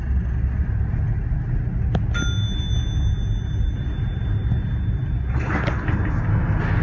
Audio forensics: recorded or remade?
recorded